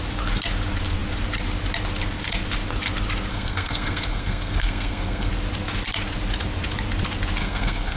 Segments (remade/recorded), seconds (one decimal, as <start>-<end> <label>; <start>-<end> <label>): 0.0-3.3 recorded; 3.3-5.3 remade; 5.3-7.4 recorded; 7.4-8.0 remade